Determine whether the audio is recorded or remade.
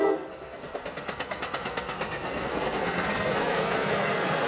remade